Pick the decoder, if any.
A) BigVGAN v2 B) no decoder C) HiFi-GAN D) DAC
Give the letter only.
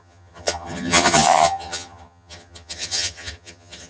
C